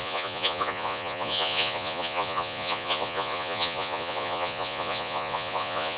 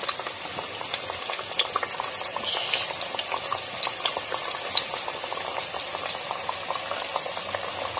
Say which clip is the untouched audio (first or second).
second